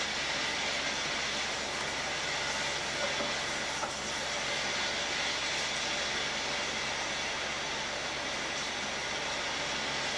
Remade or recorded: recorded